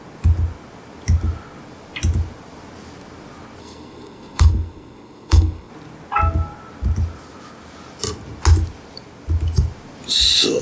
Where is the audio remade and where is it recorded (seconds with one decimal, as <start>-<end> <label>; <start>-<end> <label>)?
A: 0.0-3.6 recorded; 3.6-5.7 remade; 5.7-10.6 recorded